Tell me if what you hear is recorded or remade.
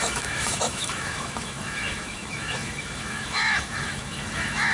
remade